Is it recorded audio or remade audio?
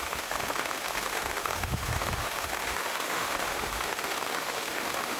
remade